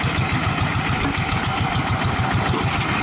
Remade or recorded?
recorded